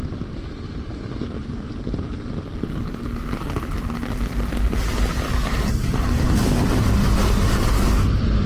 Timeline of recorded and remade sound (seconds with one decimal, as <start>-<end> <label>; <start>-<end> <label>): 0.0-1.8 remade; 1.8-3.8 recorded; 3.8-7.5 remade; 7.5-8.5 recorded